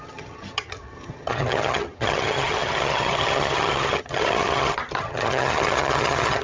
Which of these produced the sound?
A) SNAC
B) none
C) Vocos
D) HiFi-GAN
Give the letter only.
D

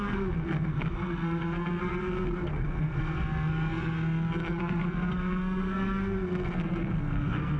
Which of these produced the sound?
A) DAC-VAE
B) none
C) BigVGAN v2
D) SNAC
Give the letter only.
D